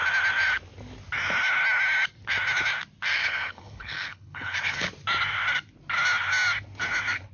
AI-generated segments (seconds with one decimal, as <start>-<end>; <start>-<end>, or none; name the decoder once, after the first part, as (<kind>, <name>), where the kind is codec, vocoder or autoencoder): 3.2-4.9 (codec, HILCodec)

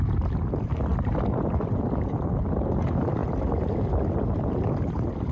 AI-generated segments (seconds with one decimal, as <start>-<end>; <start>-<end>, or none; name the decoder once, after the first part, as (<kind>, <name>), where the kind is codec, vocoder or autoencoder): none

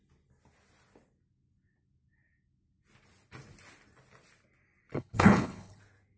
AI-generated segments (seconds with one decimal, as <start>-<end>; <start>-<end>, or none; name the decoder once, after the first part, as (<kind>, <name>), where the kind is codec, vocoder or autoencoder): 4.9-5.8 (codec, HILCodec)

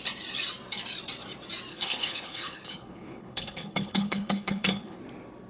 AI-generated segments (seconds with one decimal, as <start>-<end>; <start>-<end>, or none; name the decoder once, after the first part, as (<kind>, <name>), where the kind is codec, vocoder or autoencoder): 1.7-5.0 (codec, HILCodec)

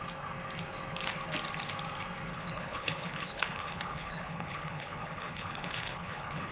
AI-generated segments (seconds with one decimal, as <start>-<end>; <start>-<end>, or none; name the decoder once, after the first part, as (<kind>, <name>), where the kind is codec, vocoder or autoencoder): 2.3-6.5 (codec, HILCodec)

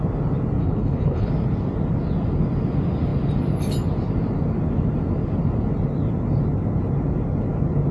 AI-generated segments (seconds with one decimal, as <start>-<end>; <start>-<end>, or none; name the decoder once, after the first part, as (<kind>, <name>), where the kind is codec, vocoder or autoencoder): 0.6-1.3 (codec, HILCodec)

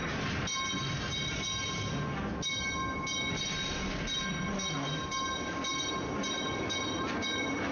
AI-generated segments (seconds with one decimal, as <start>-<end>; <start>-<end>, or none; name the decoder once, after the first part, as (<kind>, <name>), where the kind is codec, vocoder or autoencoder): none